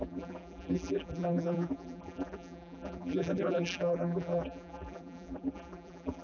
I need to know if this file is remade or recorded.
remade